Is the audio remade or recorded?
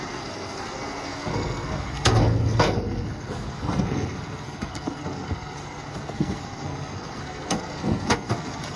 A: remade